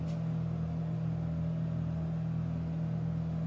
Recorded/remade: recorded